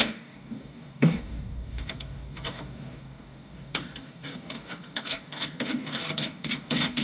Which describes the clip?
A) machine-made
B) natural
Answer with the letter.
A